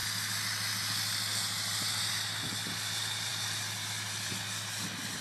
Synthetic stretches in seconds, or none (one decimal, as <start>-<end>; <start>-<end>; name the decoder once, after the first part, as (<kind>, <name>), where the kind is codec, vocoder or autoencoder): none